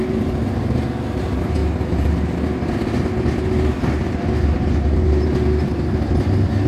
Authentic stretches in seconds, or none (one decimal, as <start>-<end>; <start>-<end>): 0.0-6.7